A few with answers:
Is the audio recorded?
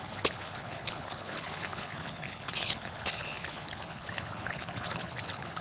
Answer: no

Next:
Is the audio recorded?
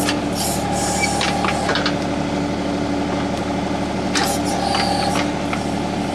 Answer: yes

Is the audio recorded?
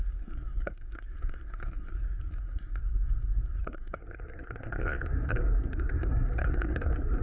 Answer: no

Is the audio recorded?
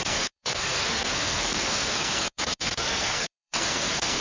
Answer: no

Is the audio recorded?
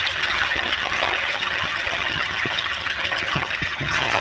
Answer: no